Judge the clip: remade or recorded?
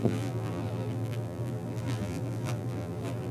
remade